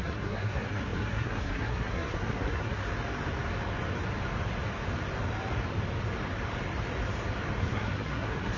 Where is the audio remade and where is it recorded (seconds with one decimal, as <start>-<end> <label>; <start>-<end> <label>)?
0.0-2.8 remade; 2.8-7.6 recorded; 7.6-8.6 remade